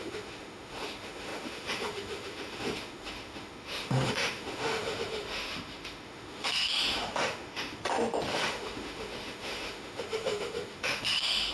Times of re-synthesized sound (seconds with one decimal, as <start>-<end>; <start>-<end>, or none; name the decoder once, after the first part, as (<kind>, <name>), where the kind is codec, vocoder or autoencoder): 0.0-7.8 (autoencoder, DAC-VAE); 8.3-11.5